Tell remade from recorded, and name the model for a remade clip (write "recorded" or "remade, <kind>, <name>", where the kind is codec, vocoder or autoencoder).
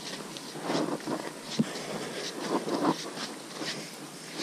recorded